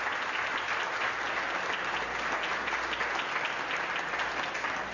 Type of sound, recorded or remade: recorded